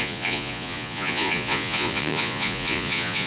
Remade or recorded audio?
remade